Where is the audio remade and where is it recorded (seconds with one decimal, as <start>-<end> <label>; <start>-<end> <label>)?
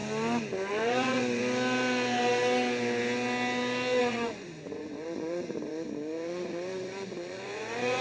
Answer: 0.0-0.7 recorded; 0.7-1.4 remade; 1.4-4.0 recorded; 4.0-8.0 remade